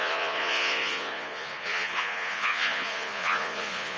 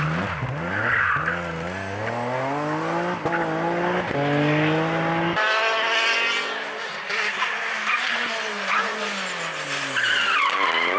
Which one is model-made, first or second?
first